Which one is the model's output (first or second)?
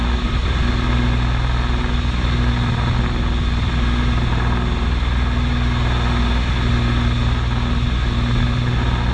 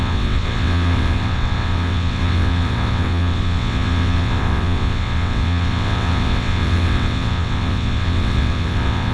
second